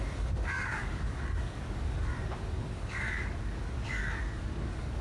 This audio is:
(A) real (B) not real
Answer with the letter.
B